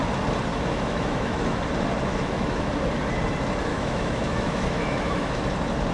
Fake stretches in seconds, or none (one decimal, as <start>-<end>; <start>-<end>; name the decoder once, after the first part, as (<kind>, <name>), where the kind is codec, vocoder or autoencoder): 0.5-1.6 (autoencoder, DAC-VAE); 2.1-2.7; 3.7-5.4